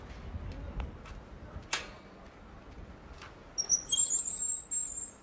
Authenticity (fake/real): real